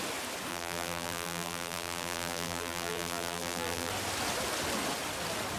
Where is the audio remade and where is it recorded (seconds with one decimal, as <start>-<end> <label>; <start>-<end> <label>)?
0.0-0.5 recorded; 0.5-3.9 remade; 3.9-5.6 recorded